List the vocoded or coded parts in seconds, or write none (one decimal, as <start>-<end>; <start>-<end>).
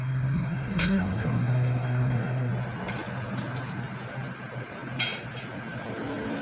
0.0-2.5